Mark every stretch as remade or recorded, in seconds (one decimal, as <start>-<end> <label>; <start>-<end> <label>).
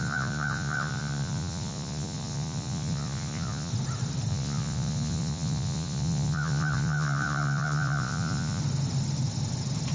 0.0-3.7 remade; 3.7-4.3 recorded; 4.3-8.6 remade; 8.6-9.9 recorded